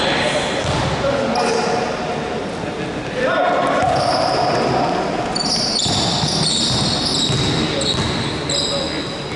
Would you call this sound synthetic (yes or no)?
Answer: no